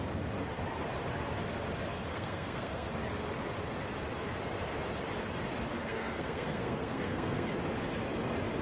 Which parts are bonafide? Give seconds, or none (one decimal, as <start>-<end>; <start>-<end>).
0.0-2.1; 2.9-5.7; 7.5-8.6